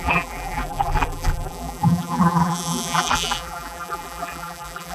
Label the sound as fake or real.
fake